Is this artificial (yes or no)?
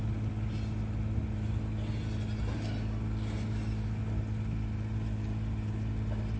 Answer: no